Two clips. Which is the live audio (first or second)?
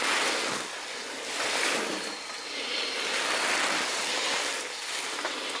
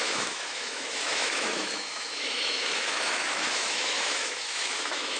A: first